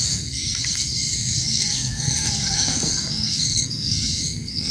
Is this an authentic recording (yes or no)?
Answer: no